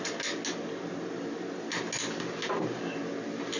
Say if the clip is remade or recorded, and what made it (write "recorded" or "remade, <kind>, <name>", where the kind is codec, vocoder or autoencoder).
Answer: recorded